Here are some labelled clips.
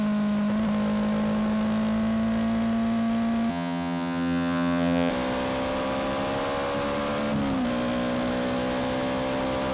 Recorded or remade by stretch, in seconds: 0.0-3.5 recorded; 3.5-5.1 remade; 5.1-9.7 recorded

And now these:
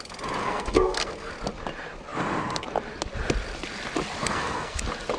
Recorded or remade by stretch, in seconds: 0.0-0.4 recorded; 0.4-1.3 remade; 1.3-4.2 recorded; 4.2-4.8 remade; 4.8-5.2 recorded

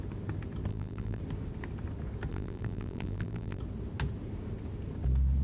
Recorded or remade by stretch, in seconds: 0.0-0.7 recorded; 0.7-1.2 remade; 1.2-2.3 recorded; 2.3-3.6 remade; 3.6-5.4 recorded

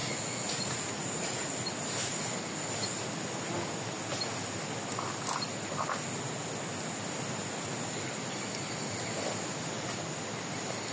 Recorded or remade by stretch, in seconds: 0.0-1.5 remade; 1.5-10.9 recorded